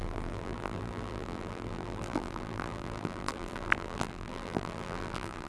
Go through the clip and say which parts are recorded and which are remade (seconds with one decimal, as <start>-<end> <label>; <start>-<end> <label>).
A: 0.0-5.5 remade